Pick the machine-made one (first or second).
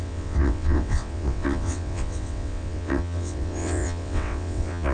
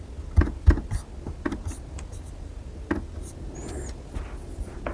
first